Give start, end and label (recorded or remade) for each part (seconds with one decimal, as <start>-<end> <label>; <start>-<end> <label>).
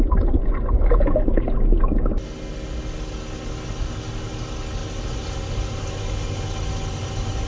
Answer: 0.0-7.5 recorded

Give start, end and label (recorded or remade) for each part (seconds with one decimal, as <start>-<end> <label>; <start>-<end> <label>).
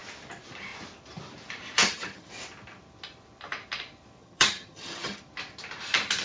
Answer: 0.0-1.8 recorded; 1.8-2.3 remade; 2.3-4.2 recorded; 4.2-5.2 remade; 5.2-6.2 recorded